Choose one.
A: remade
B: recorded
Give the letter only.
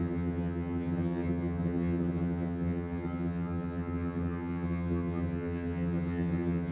A